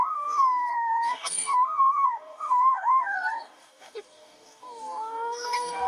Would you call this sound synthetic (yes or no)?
yes